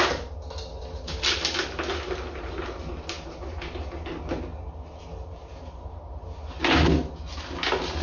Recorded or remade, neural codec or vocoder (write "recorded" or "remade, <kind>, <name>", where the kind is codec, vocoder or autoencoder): recorded